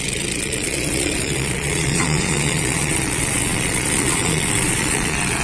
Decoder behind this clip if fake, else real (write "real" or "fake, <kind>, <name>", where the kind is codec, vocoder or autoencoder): fake, vocoder, Vocos